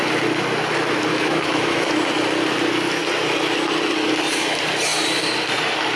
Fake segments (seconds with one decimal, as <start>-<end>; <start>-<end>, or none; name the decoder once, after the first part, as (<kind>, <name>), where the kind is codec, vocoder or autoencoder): 1.1-1.9 (autoencoder, DAC-VAE)